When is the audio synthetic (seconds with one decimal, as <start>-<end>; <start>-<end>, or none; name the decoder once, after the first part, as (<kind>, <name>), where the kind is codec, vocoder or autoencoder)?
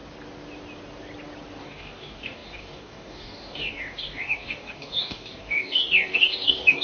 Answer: 1.6-6.8 (codec, DAC)